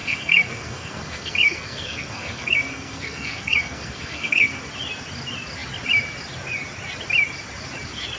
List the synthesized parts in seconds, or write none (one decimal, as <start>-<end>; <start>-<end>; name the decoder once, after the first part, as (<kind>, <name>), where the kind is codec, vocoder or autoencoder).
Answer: 0.0-4.6 (codec, SNAC)

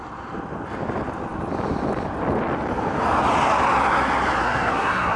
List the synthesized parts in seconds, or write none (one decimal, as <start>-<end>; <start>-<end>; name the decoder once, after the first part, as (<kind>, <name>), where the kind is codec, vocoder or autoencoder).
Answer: 4.4-5.2 (codec, SNAC)

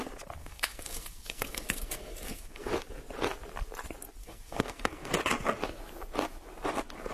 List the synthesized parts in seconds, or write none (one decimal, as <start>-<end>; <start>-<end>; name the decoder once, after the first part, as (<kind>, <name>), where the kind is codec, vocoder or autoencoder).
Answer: 0.4-2.7 (codec, SNAC); 4.2-5.1

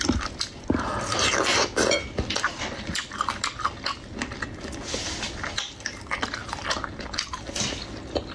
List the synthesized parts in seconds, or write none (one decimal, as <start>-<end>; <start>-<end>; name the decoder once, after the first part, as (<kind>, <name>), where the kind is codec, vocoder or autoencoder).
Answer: none

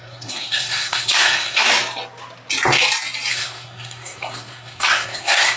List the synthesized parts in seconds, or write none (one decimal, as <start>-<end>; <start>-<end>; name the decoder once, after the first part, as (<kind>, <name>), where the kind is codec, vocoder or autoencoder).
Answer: 0.0-1.7 (codec, SNAC); 3.3-5.6

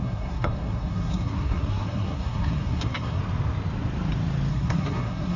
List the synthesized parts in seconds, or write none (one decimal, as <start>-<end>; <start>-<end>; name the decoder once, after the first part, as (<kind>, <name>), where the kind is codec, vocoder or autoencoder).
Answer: 0.0-3.2 (codec, SNAC); 4.5-5.4